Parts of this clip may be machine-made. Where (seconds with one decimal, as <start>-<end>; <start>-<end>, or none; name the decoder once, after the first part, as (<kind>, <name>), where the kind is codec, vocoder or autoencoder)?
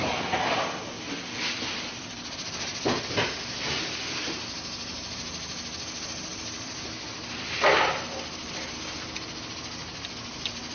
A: none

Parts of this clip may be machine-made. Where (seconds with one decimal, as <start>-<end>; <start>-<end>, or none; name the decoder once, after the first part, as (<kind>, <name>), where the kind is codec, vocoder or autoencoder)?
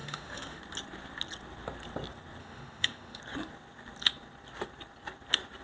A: 0.0-0.6 (autoencoder, DAC-VAE); 2.4-3.2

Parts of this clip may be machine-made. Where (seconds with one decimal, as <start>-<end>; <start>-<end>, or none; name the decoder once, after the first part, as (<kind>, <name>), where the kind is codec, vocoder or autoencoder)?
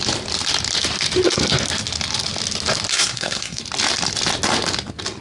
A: 2.9-3.6 (codec, SNAC)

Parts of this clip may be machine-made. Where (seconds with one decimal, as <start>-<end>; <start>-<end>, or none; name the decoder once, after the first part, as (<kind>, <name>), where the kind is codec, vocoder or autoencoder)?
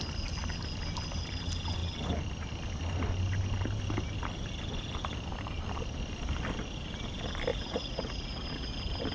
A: 7.5-8.7 (vocoder, Vocos)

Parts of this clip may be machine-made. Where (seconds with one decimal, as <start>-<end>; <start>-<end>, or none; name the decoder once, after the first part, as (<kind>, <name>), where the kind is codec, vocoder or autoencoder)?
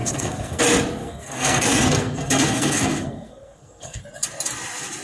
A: 0.0-0.6 (codec, SNAC); 1.0-4.0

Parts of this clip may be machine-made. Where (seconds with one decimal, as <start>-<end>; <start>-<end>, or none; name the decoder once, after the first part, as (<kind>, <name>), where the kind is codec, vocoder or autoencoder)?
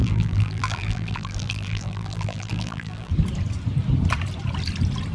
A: 0.0-3.1 (vocoder, BigVGAN v2)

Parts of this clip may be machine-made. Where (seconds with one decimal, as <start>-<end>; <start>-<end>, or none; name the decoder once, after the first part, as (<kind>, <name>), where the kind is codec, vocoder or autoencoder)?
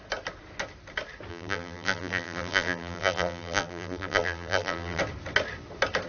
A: 1.3-5.0 (vocoder, BigVGAN v2)